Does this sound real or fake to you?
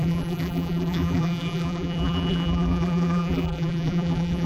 fake